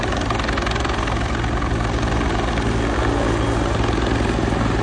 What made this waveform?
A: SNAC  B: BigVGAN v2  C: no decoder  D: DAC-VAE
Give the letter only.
C